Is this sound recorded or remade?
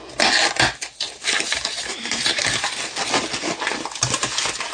recorded